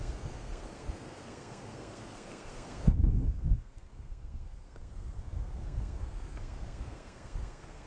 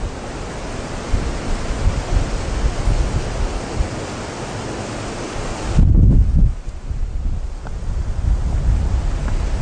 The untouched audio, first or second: second